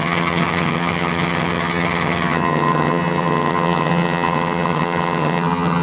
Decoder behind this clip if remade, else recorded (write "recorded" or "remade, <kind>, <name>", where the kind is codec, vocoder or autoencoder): remade, vocoder, HiFi-GAN